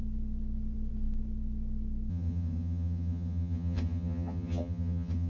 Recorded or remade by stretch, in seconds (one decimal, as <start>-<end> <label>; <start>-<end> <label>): 0.0-2.1 recorded; 2.1-5.3 remade